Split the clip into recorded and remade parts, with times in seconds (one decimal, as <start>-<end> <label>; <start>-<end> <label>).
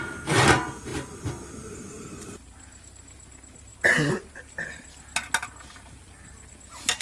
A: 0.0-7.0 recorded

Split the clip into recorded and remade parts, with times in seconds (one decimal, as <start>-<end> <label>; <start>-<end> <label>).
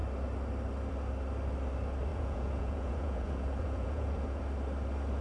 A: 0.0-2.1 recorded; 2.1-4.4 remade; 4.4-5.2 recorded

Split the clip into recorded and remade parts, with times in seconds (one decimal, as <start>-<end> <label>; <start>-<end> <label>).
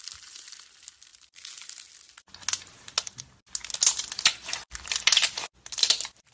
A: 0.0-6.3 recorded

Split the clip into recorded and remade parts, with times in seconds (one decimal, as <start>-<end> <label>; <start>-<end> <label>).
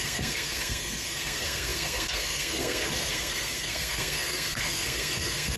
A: 0.0-5.6 remade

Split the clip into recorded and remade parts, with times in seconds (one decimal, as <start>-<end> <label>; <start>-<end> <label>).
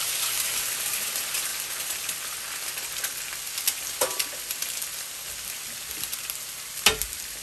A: 0.0-1.5 remade; 1.5-5.9 recorded; 5.9-7.4 remade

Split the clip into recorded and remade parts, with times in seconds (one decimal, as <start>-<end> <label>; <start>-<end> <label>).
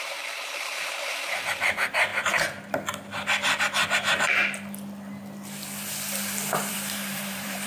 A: 0.0-2.1 remade; 2.1-6.7 recorded; 6.7-7.7 remade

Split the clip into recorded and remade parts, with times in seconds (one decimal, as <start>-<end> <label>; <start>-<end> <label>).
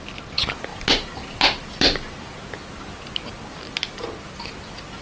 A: 0.0-5.0 recorded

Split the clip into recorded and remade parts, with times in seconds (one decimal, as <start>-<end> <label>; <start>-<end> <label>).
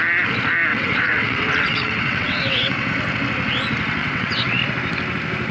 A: 0.0-0.7 recorded; 0.7-2.9 remade; 2.9-4.0 recorded; 4.0-4.6 remade; 4.6-5.5 recorded